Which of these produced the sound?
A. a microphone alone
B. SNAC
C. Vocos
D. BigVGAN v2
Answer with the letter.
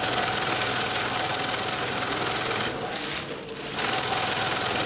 A